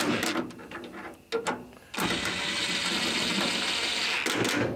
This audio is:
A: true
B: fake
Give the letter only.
A